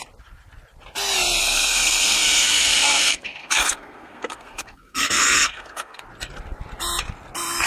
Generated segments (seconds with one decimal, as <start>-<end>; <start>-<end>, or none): 1.4-6.0